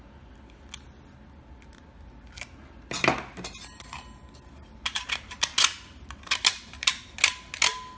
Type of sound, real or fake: real